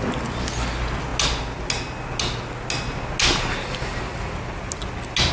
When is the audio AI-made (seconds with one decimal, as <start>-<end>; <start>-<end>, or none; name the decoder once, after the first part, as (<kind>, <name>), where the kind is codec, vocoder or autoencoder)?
none